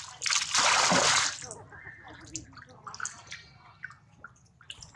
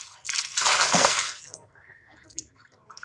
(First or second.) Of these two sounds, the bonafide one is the first